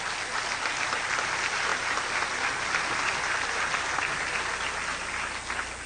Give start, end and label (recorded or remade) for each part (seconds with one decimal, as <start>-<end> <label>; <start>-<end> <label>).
0.0-5.9 recorded